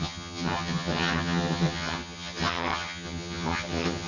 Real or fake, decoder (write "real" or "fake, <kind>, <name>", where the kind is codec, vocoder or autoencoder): fake, vocoder, HiFi-GAN